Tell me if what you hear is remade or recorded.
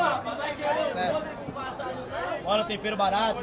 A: recorded